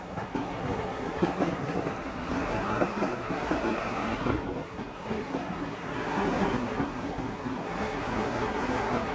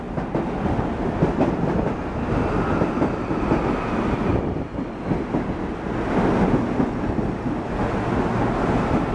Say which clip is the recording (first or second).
second